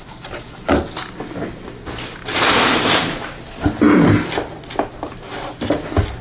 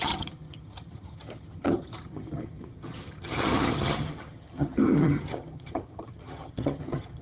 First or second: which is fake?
second